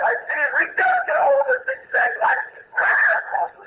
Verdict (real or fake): fake